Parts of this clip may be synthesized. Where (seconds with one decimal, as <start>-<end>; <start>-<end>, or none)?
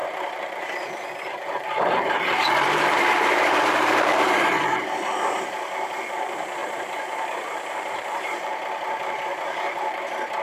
0.0-4.7; 6.6-10.0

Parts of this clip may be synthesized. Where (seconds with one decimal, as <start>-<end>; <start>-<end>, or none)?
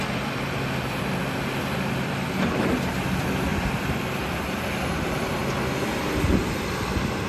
0.0-5.4; 6.2-7.3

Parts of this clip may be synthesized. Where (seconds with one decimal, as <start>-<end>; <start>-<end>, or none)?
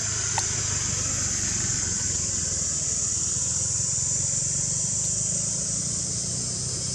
0.0-0.6; 1.7-5.8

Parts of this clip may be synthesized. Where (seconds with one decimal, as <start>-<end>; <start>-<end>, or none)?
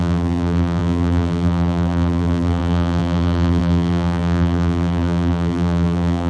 0.0-6.3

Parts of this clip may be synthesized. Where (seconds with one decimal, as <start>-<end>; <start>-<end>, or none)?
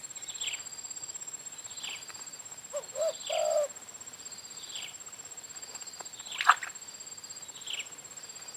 0.0-6.1; 7.1-8.6